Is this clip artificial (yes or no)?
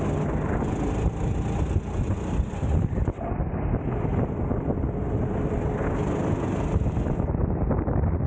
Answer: no